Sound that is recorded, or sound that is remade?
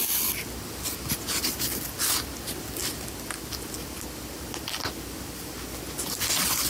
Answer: recorded